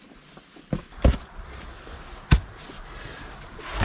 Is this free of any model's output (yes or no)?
yes